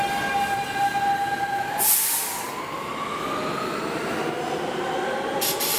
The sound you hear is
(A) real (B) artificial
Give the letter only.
A